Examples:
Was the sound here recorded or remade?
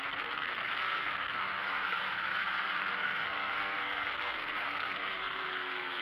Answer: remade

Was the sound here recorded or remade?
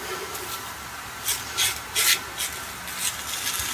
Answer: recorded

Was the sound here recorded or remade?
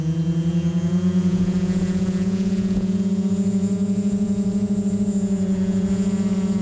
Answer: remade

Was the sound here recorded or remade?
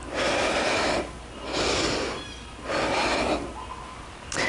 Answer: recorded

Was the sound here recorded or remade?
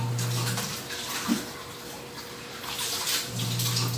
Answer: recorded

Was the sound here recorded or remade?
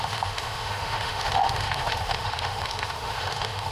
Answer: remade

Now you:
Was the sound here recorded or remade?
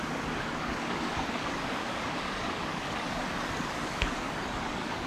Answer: remade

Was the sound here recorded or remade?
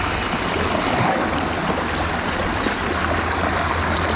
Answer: recorded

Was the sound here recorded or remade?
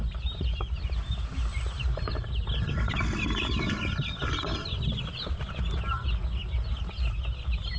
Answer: recorded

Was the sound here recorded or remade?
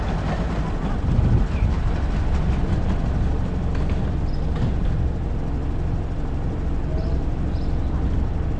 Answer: recorded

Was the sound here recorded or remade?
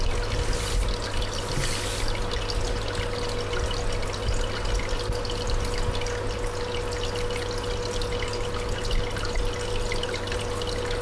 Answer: recorded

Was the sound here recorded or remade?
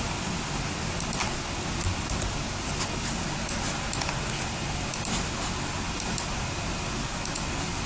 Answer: recorded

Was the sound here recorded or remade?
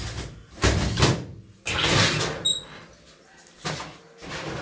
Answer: recorded